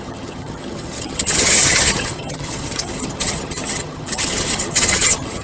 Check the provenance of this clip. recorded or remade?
remade